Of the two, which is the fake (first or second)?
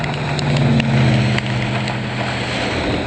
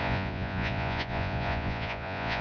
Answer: second